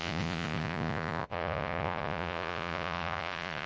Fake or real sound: fake